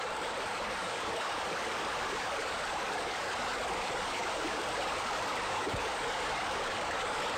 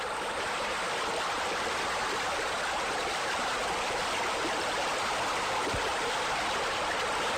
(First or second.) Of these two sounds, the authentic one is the second